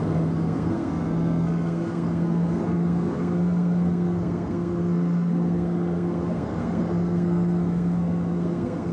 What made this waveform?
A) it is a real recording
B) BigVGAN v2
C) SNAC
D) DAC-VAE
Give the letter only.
C